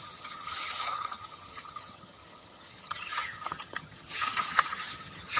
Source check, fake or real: fake